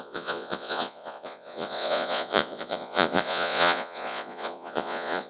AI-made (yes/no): yes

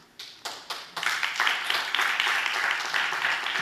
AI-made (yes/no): no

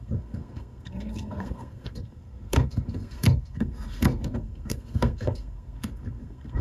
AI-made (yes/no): yes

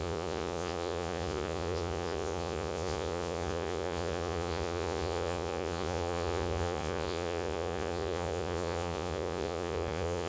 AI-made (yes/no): yes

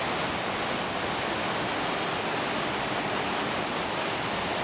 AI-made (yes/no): no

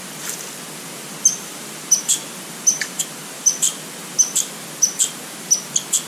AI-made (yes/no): no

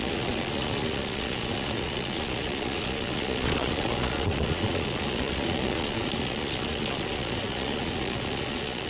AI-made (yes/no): yes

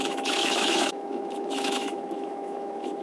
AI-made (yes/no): yes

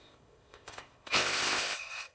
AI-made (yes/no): yes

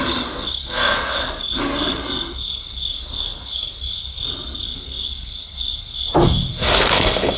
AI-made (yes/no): yes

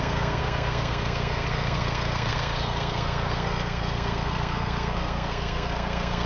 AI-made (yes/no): yes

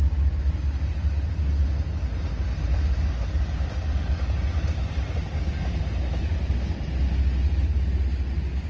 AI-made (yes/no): no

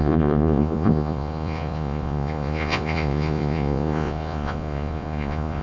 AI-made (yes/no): yes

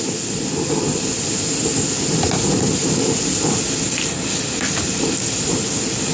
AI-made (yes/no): no